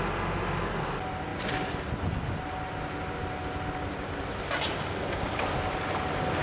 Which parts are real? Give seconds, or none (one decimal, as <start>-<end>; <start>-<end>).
0.0-6.4